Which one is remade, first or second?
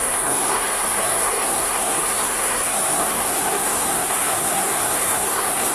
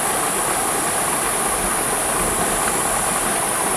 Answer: first